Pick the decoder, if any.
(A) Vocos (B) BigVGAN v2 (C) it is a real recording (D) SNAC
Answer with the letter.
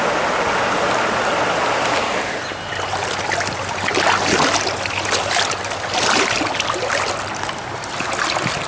C